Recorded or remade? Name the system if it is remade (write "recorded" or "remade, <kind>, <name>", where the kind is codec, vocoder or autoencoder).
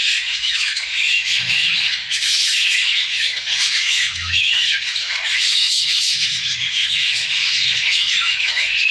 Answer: remade, autoencoder, DAC-VAE